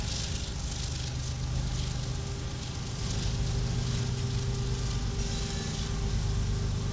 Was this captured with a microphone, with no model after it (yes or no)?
yes